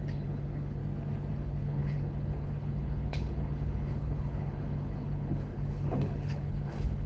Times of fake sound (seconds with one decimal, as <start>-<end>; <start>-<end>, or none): 0.0-0.8; 1.3-7.1